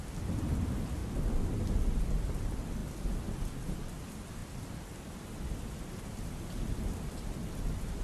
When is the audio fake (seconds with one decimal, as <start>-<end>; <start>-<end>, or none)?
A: 1.0-1.5; 4.4-7.5